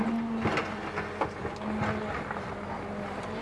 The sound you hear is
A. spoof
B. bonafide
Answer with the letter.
B